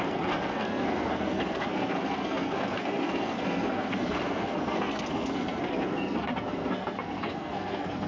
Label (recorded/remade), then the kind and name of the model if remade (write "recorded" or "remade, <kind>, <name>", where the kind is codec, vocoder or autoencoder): remade, codec, SNAC